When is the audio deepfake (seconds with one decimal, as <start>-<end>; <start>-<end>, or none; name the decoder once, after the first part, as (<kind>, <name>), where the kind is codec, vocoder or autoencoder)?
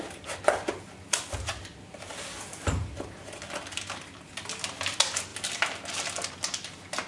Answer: none